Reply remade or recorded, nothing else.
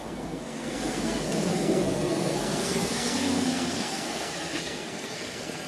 remade